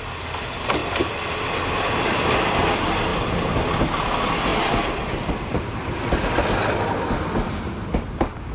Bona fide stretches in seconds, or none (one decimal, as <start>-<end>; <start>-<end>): 0.0-3.1; 4.0-4.5; 6.0-8.5